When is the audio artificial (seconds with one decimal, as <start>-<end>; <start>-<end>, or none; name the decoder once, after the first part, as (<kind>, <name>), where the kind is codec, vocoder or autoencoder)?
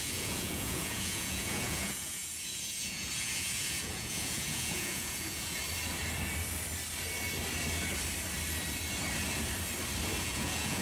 0.0-5.6 (vocoder, Vocos); 10.2-10.8